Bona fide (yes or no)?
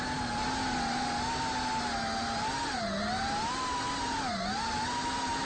yes